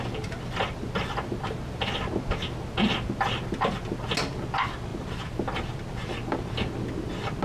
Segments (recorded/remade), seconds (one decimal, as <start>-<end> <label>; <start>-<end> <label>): 0.0-7.4 recorded